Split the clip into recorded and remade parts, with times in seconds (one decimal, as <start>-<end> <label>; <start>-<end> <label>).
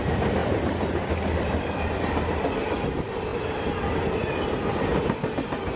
0.0-0.4 recorded; 0.4-2.8 remade; 2.8-3.3 recorded; 3.3-4.0 remade; 4.0-5.8 recorded